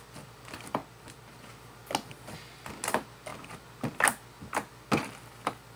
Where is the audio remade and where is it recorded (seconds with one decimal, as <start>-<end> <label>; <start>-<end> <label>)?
0.0-5.8 recorded